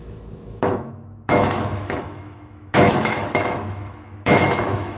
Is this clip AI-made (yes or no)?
yes